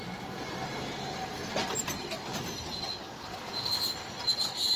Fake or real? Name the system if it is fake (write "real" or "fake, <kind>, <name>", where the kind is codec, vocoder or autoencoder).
real